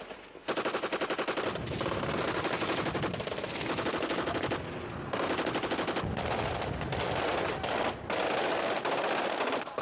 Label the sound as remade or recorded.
recorded